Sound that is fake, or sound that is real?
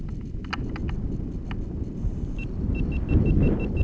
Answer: real